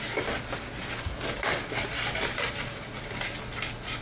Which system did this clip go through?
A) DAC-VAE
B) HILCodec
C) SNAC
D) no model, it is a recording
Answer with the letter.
D